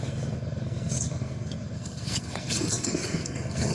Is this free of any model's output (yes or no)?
no